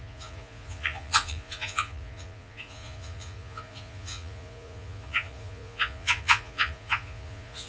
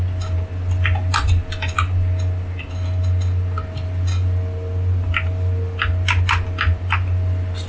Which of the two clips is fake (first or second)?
first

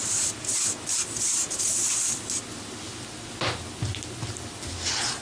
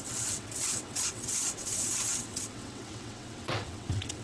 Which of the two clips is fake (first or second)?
second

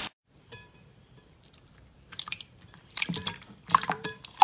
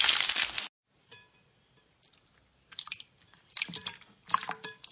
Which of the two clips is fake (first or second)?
first